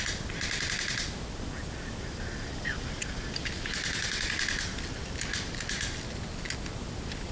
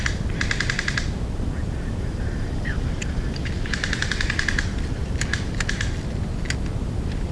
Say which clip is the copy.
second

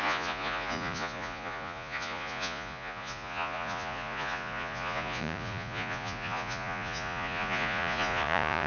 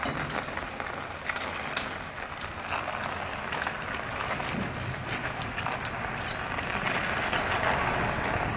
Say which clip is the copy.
first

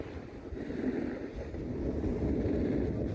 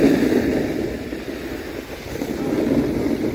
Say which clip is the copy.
second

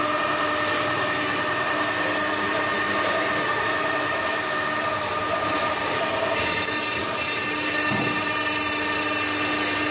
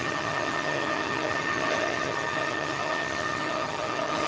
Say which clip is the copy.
second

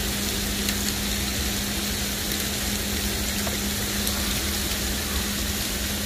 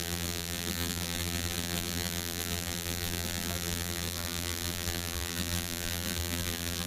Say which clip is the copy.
second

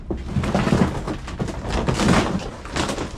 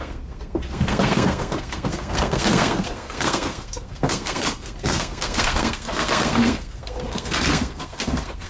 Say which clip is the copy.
second